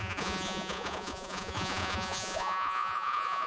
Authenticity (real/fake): fake